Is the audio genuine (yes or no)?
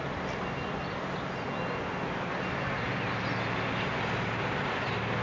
yes